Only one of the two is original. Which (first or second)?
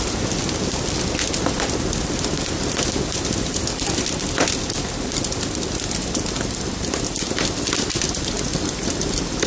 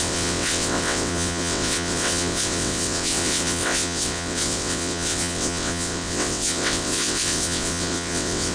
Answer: first